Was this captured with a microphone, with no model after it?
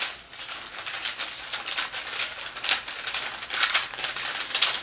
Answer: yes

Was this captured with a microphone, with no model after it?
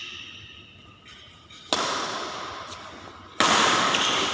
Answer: yes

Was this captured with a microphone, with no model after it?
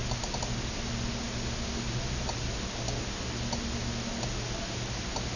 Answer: yes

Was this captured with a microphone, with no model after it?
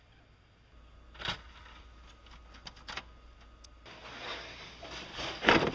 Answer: yes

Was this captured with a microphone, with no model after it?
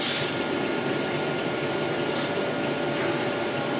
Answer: yes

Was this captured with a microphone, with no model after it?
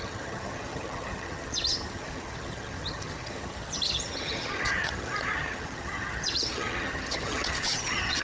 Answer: no